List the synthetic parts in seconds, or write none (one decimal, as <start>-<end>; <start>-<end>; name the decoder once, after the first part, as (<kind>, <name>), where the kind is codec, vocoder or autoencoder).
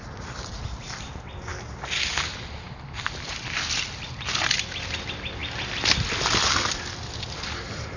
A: none